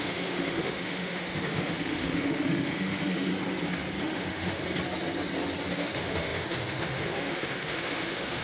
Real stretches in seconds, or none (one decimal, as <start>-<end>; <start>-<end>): 3.3-4.0; 4.6-5.7